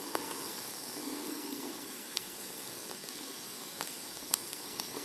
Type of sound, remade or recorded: remade